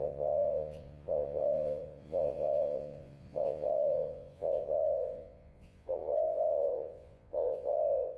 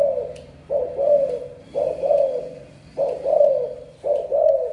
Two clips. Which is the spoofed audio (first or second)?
first